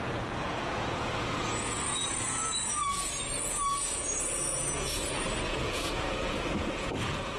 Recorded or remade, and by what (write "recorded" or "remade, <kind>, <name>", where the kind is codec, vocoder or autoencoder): remade, vocoder, Vocos